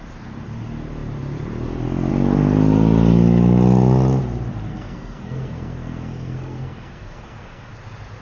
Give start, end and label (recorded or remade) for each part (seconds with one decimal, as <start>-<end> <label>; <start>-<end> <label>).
0.0-4.7 recorded; 4.7-7.7 remade; 7.7-8.2 recorded